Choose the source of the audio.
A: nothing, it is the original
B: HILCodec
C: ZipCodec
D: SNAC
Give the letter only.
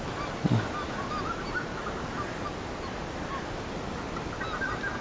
A